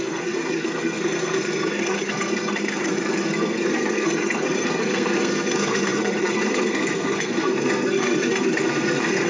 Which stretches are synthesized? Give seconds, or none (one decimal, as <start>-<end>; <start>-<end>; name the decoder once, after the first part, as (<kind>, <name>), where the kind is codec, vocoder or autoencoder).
0.0-9.3 (codec, SNAC)

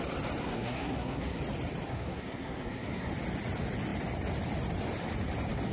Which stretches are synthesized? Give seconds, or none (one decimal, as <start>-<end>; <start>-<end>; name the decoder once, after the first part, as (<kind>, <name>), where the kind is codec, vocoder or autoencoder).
0.4-1.4 (codec, SNAC); 1.9-3.1

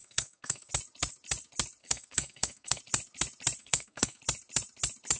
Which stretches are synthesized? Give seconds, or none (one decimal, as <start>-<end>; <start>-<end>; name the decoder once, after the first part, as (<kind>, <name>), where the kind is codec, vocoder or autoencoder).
0.0-0.7 (codec, SNAC); 1.8-2.8; 3.6-4.2

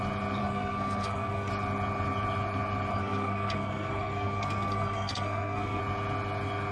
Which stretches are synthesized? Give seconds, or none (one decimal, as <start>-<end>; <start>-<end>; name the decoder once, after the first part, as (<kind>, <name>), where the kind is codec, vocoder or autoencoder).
0.4-1.5 (codec, SNAC); 2.9-5.8